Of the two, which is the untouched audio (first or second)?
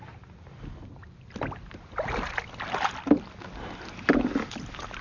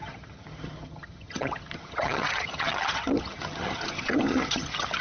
first